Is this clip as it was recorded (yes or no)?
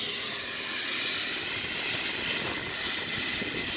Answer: yes